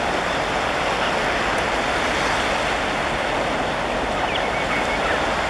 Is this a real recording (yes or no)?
yes